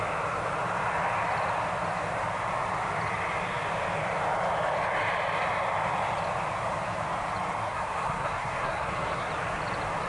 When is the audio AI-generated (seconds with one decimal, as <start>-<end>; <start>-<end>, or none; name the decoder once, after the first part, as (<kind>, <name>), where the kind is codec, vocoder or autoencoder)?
7.6-9.3 (codec, SNAC)